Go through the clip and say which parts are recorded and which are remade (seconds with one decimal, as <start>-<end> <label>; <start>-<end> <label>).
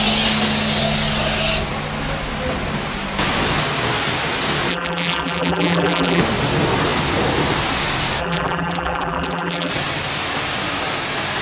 0.0-4.7 recorded; 4.7-6.2 remade; 6.2-8.2 recorded; 8.2-9.7 remade; 9.7-11.4 recorded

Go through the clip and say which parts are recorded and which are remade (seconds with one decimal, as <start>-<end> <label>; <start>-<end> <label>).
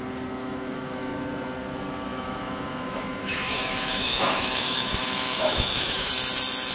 0.0-0.4 recorded; 0.4-1.1 remade; 1.1-2.1 recorded; 2.1-6.1 remade; 6.1-6.7 recorded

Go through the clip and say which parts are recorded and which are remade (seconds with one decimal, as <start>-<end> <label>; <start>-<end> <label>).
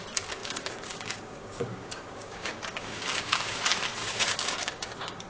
0.0-0.4 recorded; 0.4-3.6 remade; 3.6-4.0 recorded; 4.0-5.3 remade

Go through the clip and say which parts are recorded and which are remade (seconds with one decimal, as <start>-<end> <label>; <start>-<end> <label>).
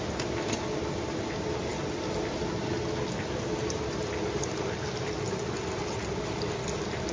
0.0-7.1 recorded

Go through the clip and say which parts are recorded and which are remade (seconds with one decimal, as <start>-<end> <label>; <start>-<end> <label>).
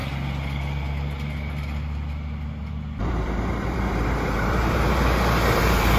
0.0-3.0 recorded; 3.0-6.0 remade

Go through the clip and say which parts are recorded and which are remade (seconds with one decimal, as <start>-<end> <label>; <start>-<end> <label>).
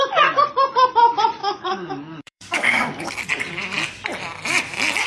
0.0-1.4 recorded; 1.4-3.1 remade; 3.1-5.1 recorded